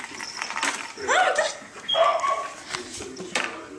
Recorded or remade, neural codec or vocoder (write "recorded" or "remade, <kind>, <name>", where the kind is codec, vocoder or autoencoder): recorded